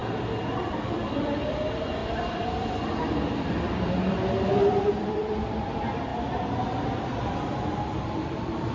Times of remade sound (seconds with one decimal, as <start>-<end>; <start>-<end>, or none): 0.6-6.1; 7.3-8.7